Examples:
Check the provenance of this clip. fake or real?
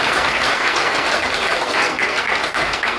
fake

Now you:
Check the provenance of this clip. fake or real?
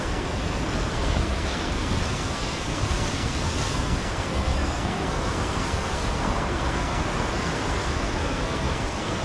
fake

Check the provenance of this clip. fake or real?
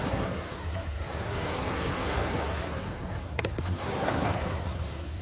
fake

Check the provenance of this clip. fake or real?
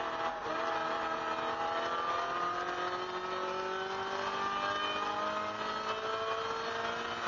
real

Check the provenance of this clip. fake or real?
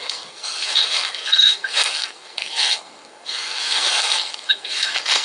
fake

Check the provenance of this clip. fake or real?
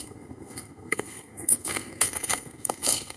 fake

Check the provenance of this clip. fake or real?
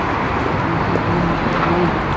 real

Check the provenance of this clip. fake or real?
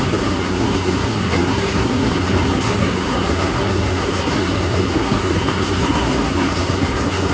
fake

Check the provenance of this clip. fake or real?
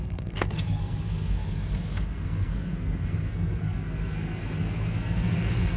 fake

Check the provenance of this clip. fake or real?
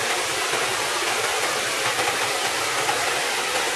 real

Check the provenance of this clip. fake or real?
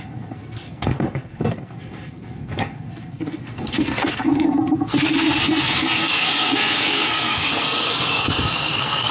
fake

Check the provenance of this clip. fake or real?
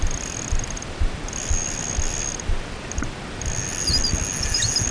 real